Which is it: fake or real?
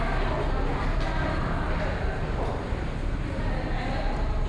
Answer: real